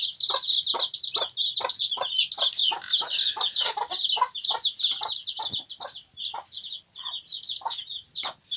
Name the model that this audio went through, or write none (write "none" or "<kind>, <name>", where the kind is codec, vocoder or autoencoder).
none